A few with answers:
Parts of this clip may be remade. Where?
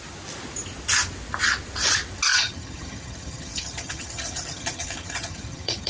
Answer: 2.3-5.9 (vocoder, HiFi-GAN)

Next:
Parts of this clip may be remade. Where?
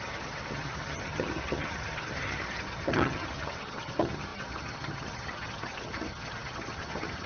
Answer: 0.0-7.3 (vocoder, HiFi-GAN)